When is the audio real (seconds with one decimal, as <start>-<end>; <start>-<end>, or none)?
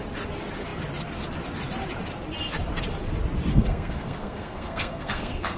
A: 0.0-3.5